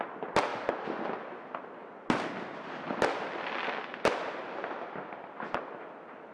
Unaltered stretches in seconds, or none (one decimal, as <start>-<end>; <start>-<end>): 0.0-6.3